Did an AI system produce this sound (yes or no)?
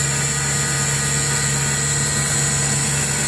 no